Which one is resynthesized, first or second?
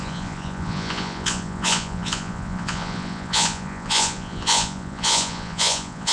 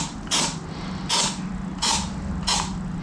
first